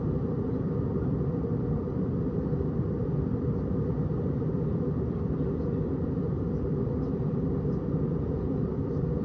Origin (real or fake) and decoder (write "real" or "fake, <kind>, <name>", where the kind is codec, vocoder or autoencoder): fake, vocoder, BigVGAN v2